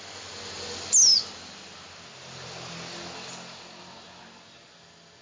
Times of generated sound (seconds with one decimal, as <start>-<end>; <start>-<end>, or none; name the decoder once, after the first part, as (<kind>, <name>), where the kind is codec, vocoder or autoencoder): none